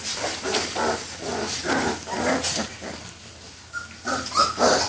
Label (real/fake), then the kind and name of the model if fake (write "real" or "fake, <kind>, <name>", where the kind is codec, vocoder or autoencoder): real